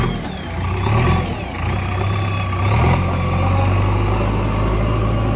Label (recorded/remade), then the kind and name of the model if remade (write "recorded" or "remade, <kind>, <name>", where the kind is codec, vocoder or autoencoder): recorded